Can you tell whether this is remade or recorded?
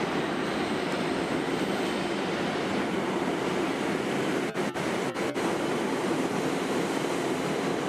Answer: remade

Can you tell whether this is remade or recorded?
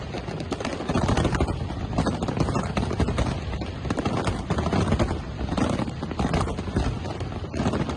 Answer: recorded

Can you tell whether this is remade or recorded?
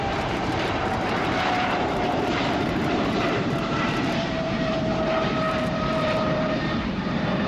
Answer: remade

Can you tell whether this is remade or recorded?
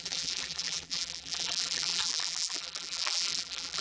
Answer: remade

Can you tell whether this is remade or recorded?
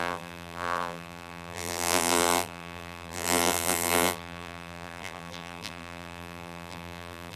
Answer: remade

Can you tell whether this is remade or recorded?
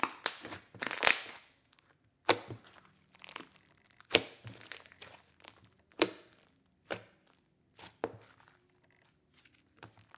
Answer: remade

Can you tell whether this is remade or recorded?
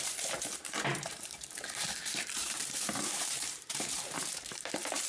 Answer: remade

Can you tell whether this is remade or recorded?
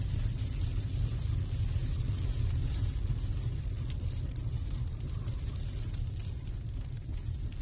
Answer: recorded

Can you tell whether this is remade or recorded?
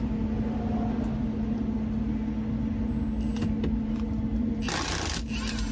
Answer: recorded